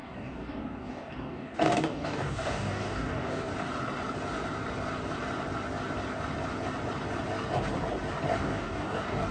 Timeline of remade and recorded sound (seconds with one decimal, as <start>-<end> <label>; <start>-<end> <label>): 0.0-3.5 remade; 3.5-8.4 recorded; 8.4-9.3 remade